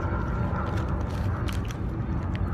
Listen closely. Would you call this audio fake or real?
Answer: real